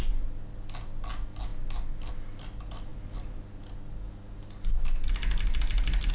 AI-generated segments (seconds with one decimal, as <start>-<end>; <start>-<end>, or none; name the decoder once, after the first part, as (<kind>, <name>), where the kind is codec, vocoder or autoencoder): none